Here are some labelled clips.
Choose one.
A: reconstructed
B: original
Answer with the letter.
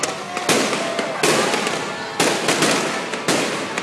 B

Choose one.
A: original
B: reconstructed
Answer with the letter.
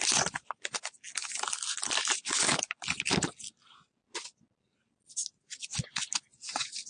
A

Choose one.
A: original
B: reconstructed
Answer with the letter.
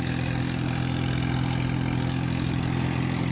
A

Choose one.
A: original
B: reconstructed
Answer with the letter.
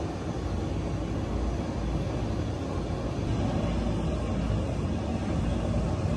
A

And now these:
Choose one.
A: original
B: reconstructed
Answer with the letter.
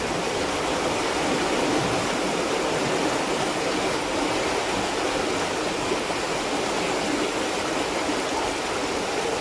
A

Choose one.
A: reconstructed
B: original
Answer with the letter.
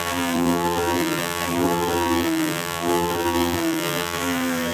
A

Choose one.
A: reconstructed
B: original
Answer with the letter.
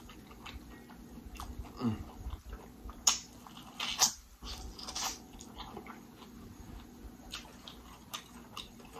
B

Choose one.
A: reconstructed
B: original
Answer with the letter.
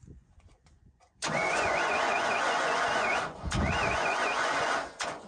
A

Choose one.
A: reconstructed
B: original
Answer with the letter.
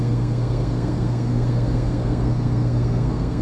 A